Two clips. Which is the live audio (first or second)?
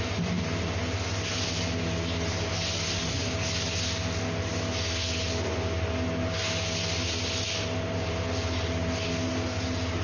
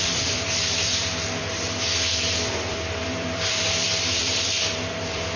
first